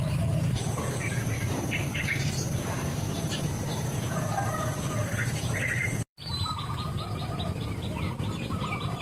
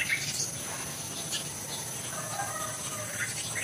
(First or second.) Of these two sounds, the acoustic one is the second